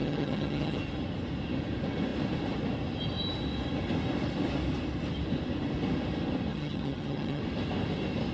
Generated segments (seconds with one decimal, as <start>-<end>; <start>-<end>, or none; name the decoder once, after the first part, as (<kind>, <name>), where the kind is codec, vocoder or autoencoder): 0.0-0.8 (vocoder, HiFi-GAN); 6.5-7.4